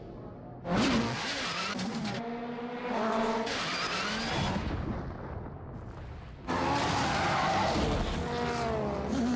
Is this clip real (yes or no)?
yes